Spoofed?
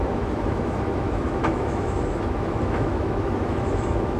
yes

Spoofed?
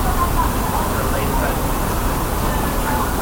yes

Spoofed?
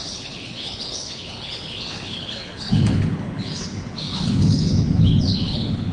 yes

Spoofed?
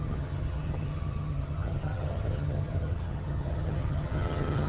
yes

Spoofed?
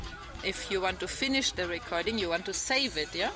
no